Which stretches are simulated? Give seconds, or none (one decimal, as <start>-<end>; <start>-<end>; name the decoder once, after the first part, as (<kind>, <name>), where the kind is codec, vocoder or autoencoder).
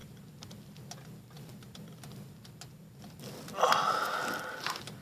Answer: none